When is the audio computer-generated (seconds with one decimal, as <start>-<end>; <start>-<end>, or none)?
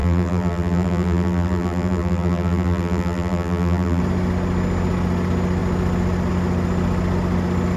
0.0-4.0